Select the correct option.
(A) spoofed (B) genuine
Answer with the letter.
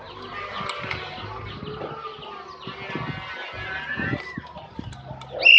B